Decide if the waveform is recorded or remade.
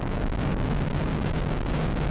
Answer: remade